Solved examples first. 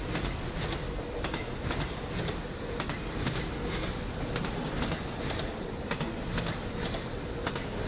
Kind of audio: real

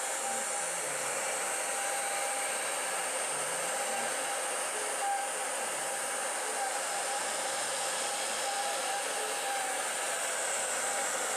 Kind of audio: real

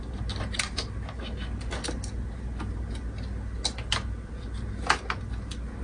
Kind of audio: real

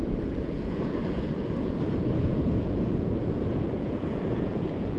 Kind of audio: fake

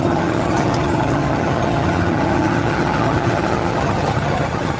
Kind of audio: fake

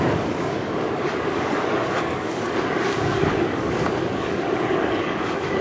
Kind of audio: fake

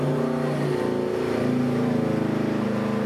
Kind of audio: real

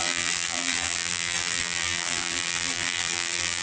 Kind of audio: fake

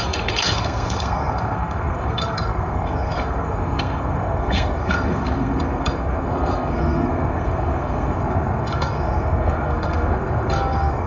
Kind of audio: fake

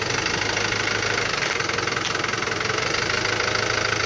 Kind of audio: real